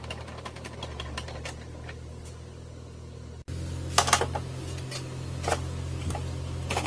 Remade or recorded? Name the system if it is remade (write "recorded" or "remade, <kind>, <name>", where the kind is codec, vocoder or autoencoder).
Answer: recorded